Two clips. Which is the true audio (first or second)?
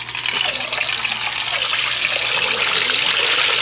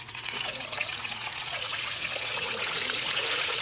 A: first